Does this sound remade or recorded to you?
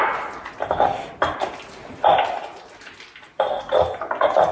recorded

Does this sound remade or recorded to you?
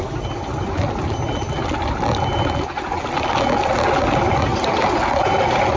recorded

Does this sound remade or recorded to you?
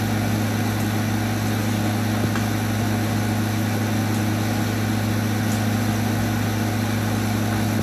recorded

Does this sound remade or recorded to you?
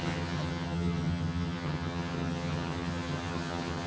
remade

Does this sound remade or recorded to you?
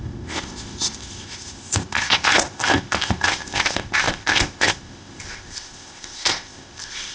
remade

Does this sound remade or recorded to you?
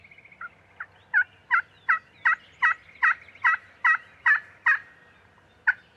recorded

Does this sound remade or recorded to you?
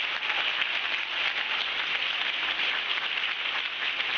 recorded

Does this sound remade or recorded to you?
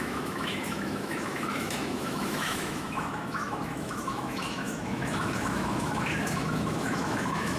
remade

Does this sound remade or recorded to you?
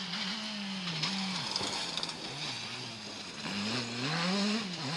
recorded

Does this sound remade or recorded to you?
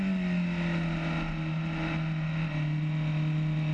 recorded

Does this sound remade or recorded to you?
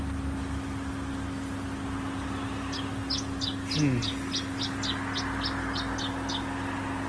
recorded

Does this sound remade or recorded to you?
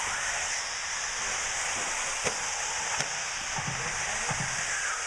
recorded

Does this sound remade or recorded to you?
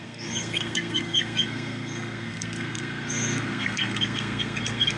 remade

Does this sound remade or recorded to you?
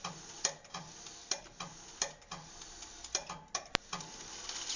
recorded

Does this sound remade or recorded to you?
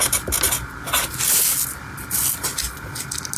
recorded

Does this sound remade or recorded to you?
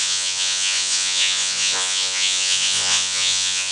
remade